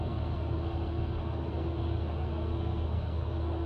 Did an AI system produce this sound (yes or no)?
yes